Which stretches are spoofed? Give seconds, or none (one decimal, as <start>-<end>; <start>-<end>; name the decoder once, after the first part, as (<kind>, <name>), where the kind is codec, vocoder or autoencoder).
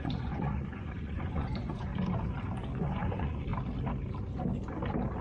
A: 0.0-1.9 (vocoder, Vocos); 2.7-3.5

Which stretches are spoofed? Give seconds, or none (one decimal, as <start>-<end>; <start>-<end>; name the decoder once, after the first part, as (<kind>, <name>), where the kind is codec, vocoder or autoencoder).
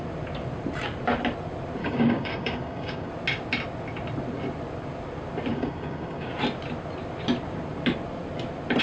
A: 1.8-3.1 (codec, DAC); 5.5-6.3